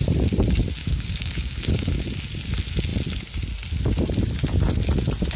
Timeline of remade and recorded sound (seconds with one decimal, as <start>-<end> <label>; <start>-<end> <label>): 0.0-0.8 recorded; 0.8-1.9 remade; 1.9-5.4 recorded